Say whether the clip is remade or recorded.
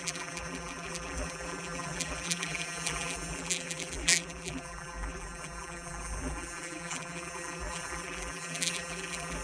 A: remade